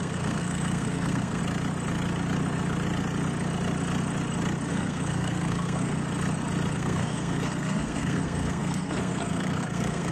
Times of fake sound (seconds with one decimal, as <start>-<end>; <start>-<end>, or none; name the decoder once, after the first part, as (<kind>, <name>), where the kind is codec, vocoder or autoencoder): 0.0-1.4 (codec, SNAC); 4.7-5.9; 6.7-10.1